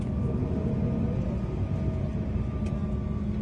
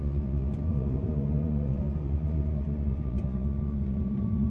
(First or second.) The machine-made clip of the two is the second